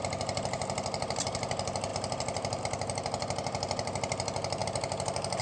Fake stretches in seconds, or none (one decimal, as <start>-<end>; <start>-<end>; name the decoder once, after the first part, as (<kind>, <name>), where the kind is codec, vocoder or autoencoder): none

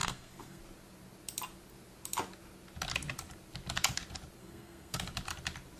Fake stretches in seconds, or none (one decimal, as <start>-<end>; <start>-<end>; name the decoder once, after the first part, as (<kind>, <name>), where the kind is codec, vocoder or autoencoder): 0.0-0.6 (codec, SNAC); 4.4-5.0

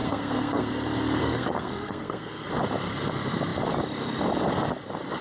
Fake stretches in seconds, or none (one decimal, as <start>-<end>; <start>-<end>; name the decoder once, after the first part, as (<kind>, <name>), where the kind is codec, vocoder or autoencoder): 0.0-0.7 (codec, SNAC); 1.2-2.5

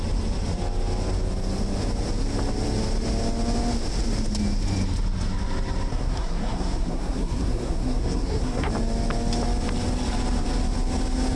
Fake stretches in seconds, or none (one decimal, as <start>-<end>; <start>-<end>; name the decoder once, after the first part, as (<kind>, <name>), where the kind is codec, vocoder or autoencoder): 5.9-8.7 (codec, SNAC)